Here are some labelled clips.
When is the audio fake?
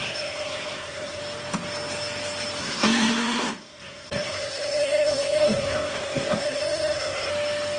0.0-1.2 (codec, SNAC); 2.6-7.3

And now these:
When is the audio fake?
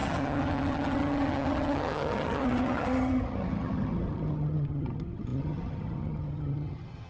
0.0-7.1 (vocoder, HiFi-GAN)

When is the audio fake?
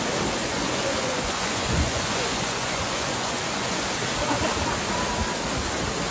0.4-3.8 (vocoder, Vocos)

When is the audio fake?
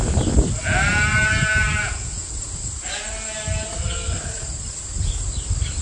1.1-2.3 (vocoder, Vocos)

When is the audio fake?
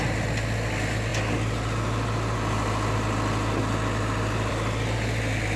none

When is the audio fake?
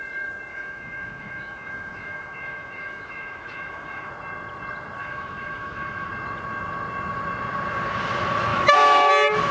0.5-4.1 (autoencoder, DAC-VAE); 5.0-6.1; 8.5-9.1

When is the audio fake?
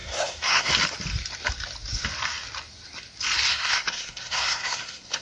0.0-0.7 (codec, SNAC); 3.5-5.2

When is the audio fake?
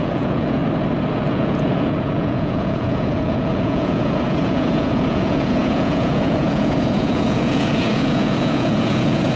0.0-0.6 (vocoder, Vocos); 1.1-9.4